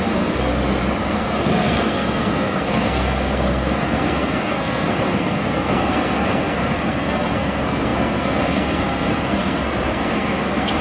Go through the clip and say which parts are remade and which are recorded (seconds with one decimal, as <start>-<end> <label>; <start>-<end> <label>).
0.0-0.5 remade; 0.5-1.1 recorded; 1.1-10.8 remade